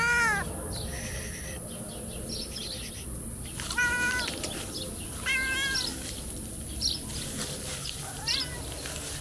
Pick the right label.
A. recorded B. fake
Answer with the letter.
A